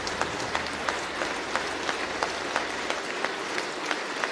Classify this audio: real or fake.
real